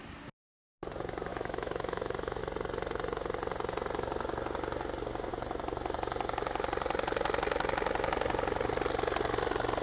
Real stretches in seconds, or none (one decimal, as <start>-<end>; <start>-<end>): 0.0-1.3; 2.4-9.8